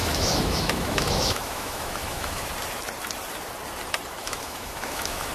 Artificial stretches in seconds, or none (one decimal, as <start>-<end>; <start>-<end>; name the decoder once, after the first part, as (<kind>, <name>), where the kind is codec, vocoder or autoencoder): 0.0-2.5 (autoencoder, DAC-VAE); 4.2-5.3